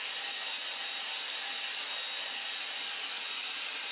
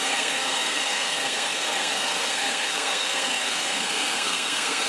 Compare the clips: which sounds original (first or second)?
first